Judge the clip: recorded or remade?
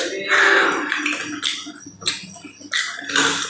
recorded